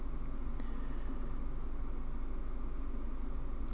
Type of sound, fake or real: real